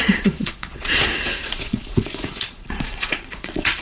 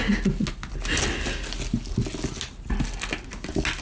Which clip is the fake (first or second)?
first